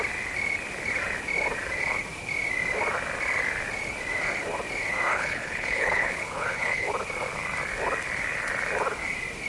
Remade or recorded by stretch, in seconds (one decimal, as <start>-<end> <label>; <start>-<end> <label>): 0.0-5.1 recorded; 5.1-6.9 remade; 6.9-9.5 recorded